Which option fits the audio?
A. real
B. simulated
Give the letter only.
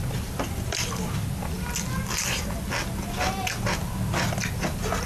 A